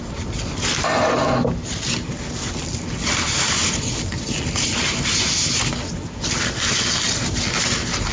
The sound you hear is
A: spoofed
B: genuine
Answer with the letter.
B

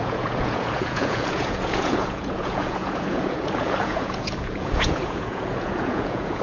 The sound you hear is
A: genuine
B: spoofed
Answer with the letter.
B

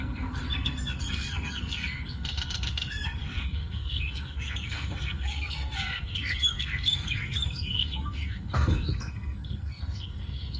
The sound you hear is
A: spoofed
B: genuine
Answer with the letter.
A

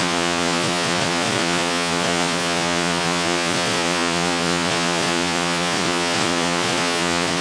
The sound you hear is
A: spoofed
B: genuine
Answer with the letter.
A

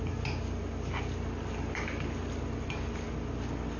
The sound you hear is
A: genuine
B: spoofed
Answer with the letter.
A